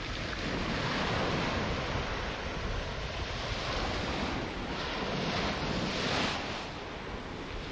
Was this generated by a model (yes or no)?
no